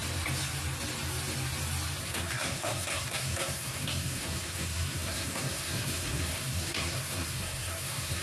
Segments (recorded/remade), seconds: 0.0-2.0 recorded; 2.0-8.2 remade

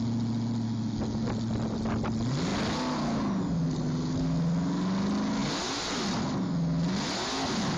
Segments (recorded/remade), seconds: 0.0-5.4 recorded; 5.4-6.2 remade; 6.2-7.8 recorded

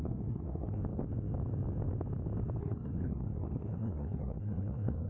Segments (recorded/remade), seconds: 0.0-0.8 remade; 0.8-2.6 recorded; 2.6-5.1 remade

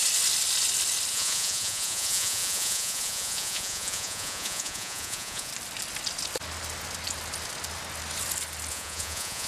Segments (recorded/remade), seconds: 0.0-1.1 recorded; 1.1-5.5 remade; 5.5-8.7 recorded; 8.7-9.5 remade